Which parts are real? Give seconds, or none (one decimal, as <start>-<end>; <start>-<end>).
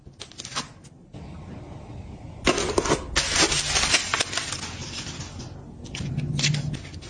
0.0-7.1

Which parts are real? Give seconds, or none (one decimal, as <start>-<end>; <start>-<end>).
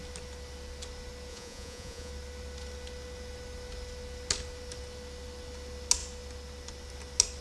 0.0-1.3; 2.1-7.4